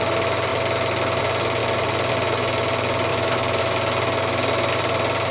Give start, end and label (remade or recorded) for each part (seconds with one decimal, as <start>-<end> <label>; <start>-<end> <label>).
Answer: 0.0-3.1 recorded; 3.1-3.6 remade; 3.6-5.3 recorded